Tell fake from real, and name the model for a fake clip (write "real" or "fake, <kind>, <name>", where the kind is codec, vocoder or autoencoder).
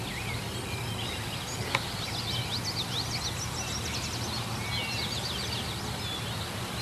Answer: real